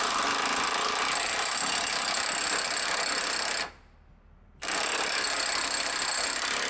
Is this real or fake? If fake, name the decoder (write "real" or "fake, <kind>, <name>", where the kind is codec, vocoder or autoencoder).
real